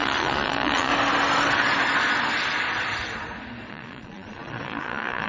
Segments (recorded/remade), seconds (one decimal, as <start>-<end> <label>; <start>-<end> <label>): 0.0-0.9 remade; 0.9-3.7 recorded; 3.7-5.3 remade